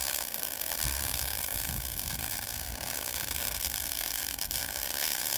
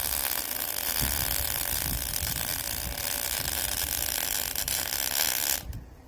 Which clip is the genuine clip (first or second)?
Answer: second